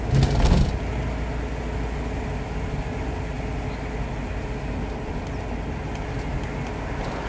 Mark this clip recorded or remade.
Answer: recorded